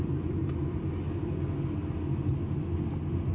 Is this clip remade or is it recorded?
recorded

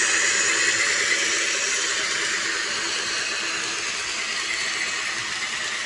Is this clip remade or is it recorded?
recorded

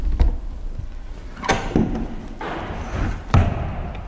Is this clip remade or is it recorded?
remade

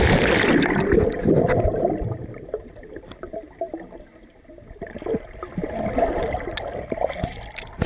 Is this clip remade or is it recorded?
recorded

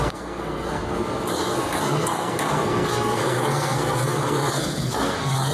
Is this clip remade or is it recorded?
remade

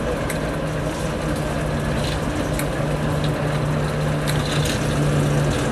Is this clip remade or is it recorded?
recorded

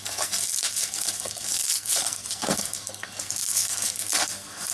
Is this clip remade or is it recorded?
remade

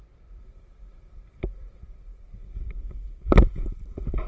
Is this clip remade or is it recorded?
remade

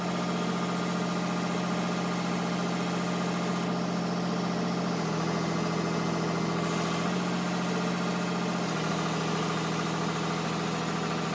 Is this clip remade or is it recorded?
recorded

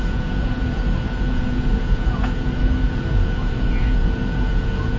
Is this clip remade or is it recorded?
remade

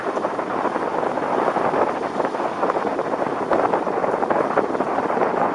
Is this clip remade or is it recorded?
recorded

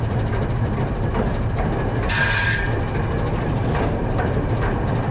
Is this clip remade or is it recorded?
recorded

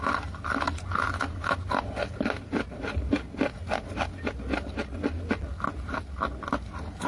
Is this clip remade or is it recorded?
recorded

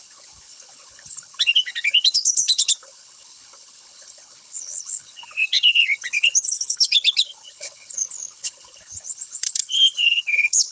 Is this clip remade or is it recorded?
remade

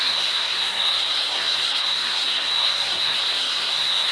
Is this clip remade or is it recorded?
remade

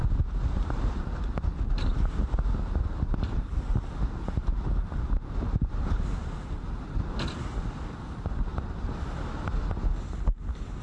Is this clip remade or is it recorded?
recorded